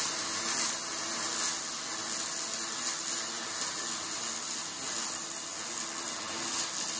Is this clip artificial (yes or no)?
no